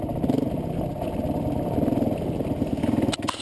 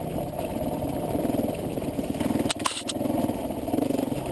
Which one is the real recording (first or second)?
first